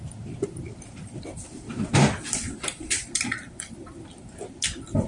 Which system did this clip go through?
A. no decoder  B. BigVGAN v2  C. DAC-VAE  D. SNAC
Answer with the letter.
B